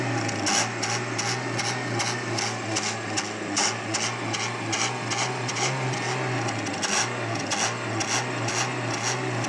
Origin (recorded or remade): recorded